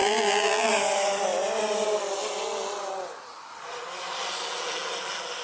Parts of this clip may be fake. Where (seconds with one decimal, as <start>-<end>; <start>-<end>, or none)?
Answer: 0.0-0.7